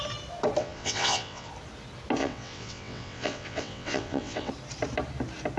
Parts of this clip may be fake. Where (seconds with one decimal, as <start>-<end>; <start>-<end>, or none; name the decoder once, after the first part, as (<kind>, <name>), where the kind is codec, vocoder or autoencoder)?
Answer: 0.6-1.5 (vocoder, WaveNeXt); 2.2-4.5